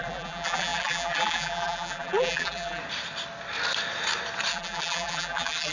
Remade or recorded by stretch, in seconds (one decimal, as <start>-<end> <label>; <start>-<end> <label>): 0.0-2.8 remade; 2.8-4.5 recorded; 4.5-5.7 remade